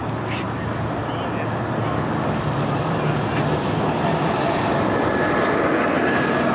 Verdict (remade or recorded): recorded